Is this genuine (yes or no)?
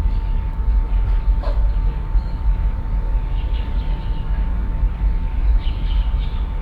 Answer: no